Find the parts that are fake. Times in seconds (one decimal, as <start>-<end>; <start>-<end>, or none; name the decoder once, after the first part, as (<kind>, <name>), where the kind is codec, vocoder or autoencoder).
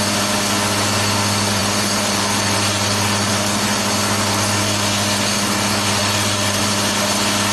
1.6-3.3 (vocoder, BigVGAN v2); 6.0-6.6